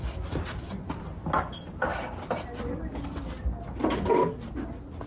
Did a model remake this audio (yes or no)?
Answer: no